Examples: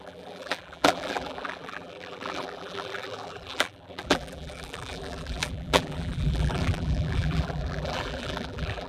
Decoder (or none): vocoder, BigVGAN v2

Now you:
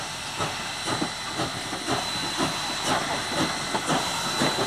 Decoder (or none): none